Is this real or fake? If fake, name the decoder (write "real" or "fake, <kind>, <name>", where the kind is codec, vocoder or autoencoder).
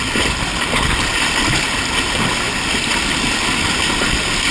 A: real